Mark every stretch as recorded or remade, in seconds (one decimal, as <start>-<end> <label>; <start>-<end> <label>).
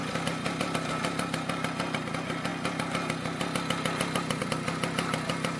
0.0-5.6 recorded